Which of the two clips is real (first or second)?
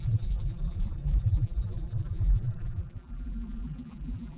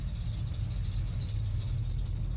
second